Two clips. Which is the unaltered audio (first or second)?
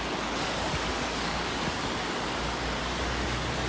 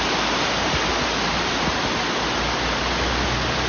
second